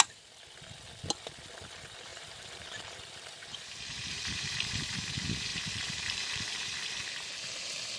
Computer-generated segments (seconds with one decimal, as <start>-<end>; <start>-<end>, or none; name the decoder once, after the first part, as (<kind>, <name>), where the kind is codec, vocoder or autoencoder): 2.1-5.0 (vocoder, BigVGAN v2); 5.5-6.4